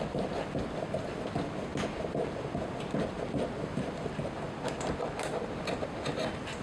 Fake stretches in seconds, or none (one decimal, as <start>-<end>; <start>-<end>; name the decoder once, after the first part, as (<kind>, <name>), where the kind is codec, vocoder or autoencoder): none